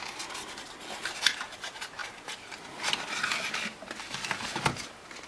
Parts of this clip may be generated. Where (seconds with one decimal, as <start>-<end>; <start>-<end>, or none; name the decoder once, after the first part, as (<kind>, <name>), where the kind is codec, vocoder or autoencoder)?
none